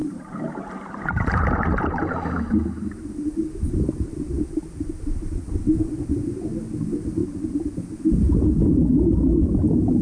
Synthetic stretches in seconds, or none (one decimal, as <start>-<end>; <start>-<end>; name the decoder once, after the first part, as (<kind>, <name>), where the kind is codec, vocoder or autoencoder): 0.0-5.0 (vocoder, BigVGAN v2); 7.2-7.8